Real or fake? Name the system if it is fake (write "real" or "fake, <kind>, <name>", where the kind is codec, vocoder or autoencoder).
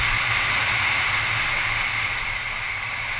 real